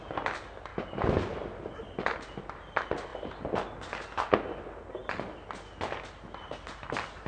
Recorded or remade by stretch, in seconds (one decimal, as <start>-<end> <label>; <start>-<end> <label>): 0.0-7.3 recorded